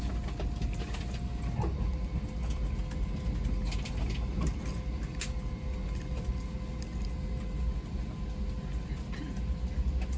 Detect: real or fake real